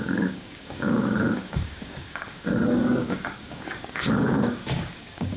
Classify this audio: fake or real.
fake